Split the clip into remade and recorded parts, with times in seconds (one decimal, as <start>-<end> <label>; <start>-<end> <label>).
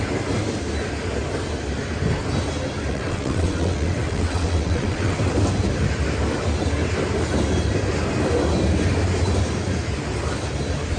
0.0-2.9 recorded; 2.9-5.2 remade; 5.2-11.0 recorded